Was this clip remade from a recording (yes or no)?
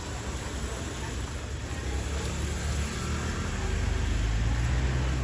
no